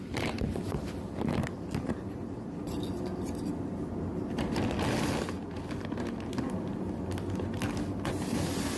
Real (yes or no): yes